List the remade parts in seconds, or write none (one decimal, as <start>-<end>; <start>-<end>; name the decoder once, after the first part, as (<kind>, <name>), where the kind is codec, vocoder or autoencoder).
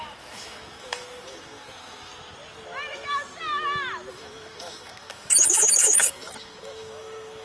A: 0.0-2.1 (autoencoder, DAC-VAE); 4.1-7.4